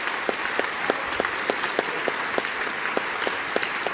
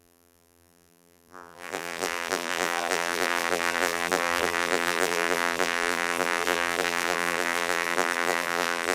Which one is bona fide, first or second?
first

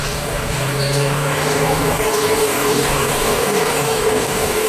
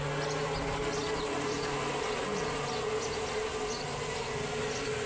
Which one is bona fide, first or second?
second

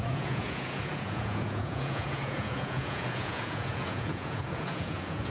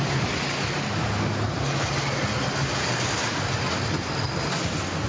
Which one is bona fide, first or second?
second